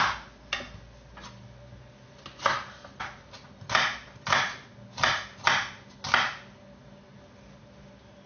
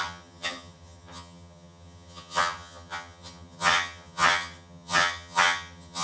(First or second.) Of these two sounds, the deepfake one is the second